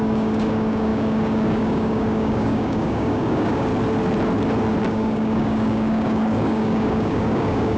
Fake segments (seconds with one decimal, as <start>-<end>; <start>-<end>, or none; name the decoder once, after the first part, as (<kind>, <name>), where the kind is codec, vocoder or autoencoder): 0.0-3.7 (codec, DAC); 4.8-7.8